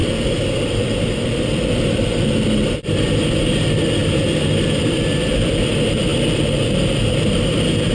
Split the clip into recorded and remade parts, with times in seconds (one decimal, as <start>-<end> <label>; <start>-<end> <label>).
0.0-7.9 remade